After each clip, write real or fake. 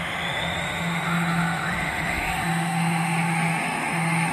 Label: fake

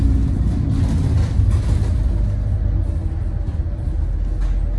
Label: real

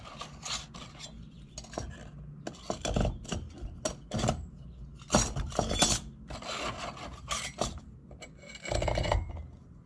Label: real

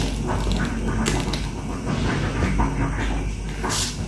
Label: real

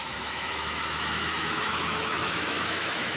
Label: fake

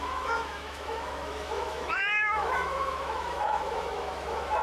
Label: fake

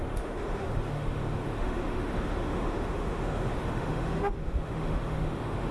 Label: fake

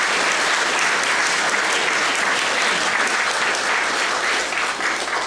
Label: real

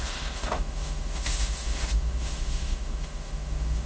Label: fake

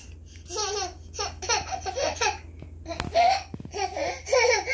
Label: real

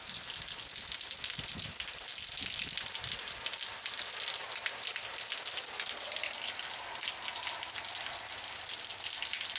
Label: real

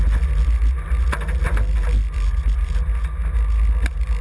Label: real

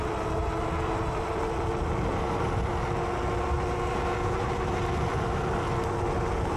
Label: real